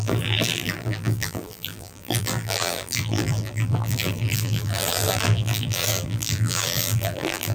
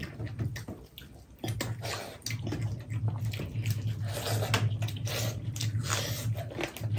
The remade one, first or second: first